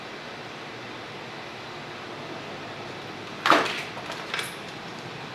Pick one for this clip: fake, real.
fake